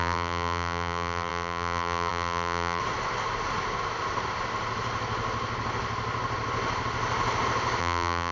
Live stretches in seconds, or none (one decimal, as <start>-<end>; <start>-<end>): 2.8-7.8